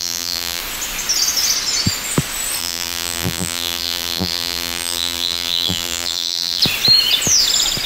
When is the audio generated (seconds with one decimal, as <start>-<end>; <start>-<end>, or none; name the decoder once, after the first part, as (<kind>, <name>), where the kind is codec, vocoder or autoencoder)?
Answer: 0.0-0.6 (vocoder, BigVGAN v2); 2.6-6.6